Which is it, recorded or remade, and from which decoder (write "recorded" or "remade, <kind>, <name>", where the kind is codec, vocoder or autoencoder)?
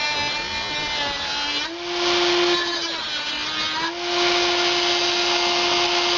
recorded